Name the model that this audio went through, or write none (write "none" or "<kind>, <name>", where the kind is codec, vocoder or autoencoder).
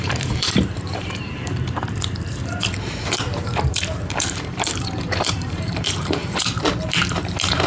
vocoder, BigVGAN v2